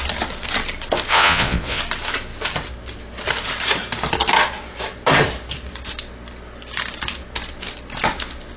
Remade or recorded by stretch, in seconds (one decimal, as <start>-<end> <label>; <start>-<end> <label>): 0.0-1.1 recorded; 1.1-1.8 remade; 1.8-8.6 recorded